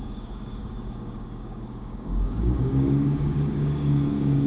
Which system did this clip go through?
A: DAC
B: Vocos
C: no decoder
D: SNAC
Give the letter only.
A